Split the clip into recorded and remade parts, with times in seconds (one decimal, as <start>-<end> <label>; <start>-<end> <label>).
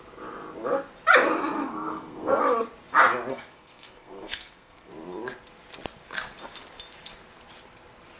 0.0-1.6 recorded; 1.6-2.4 remade; 2.4-3.3 recorded; 3.3-4.9 remade; 4.9-8.2 recorded